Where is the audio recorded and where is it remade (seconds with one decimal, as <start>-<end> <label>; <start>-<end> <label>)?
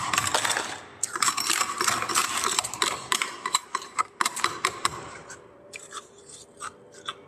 0.0-2.2 recorded; 2.2-6.6 remade; 6.6-7.3 recorded